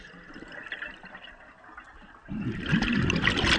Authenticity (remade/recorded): recorded